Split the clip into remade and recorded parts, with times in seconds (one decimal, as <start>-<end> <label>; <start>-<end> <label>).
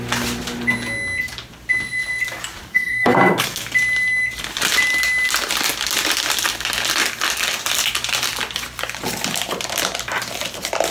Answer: 0.0-2.7 recorded; 2.7-3.6 remade; 3.6-10.9 recorded